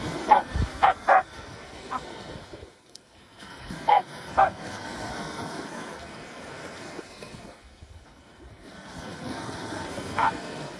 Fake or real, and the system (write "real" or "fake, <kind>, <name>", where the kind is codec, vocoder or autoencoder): fake, codec, SNAC